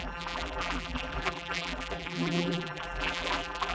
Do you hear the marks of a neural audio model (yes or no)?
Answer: yes